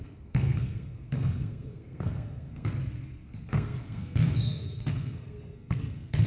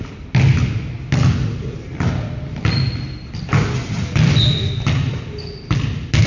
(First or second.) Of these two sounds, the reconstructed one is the first